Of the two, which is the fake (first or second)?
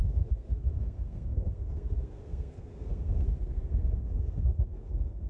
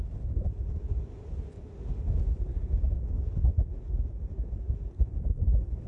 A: first